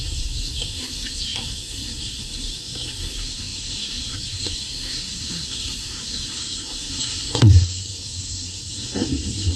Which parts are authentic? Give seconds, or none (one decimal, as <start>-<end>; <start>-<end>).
none